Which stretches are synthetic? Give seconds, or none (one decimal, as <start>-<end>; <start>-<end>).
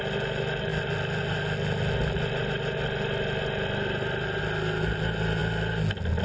none